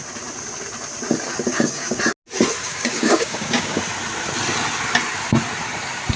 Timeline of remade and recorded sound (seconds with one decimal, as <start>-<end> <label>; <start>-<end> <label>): 0.0-1.5 recorded; 1.5-2.0 remade; 2.0-2.6 recorded; 2.6-3.8 remade; 3.8-6.2 recorded